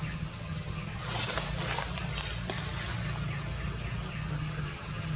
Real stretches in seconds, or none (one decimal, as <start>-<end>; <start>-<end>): 1.0-4.1